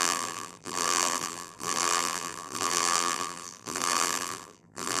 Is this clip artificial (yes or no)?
yes